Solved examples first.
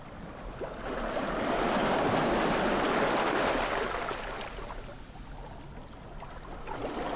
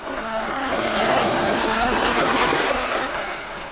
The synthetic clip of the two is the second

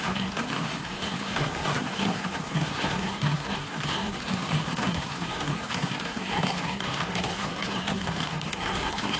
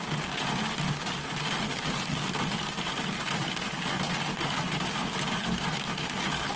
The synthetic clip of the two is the first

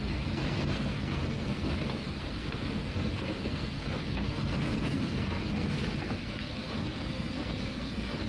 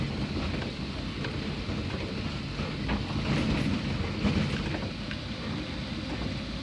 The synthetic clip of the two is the first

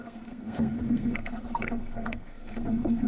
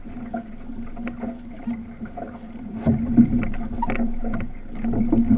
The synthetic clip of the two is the first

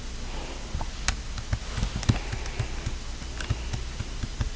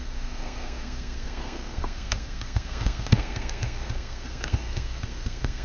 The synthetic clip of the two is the second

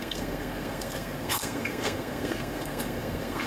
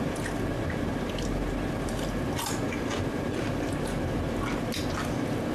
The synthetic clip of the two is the first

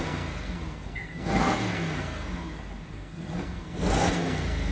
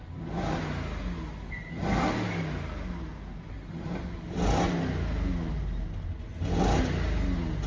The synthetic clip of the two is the first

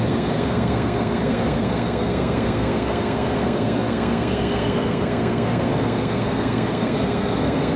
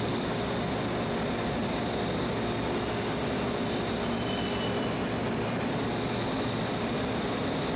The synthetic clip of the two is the first